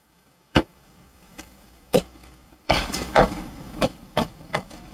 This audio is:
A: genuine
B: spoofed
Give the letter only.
B